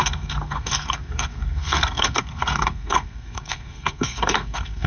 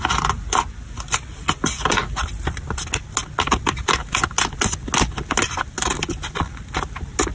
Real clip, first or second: second